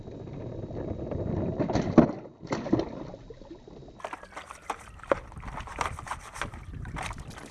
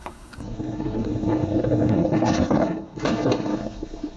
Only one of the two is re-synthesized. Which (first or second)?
second